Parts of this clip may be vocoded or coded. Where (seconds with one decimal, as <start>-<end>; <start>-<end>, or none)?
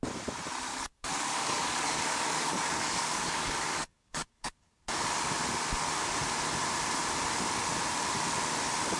0.7-4.8